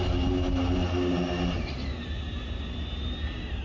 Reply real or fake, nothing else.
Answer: real